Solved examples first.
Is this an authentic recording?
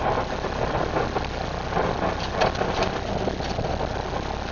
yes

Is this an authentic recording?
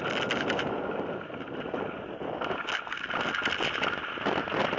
yes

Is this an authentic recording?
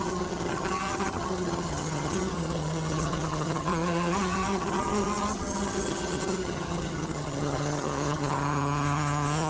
no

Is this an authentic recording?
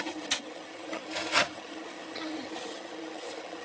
no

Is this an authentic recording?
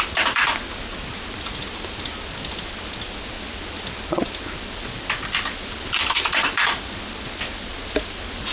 yes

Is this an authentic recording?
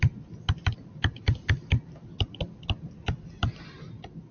yes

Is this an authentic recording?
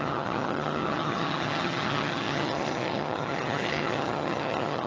no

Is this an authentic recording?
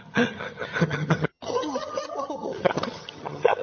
no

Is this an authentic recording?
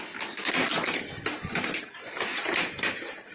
yes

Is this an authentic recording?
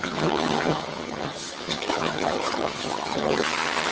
no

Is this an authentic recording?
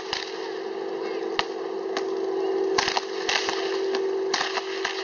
yes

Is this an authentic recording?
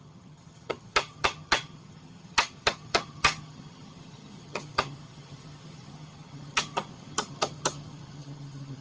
no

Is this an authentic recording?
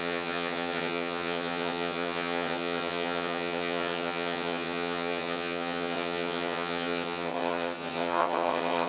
no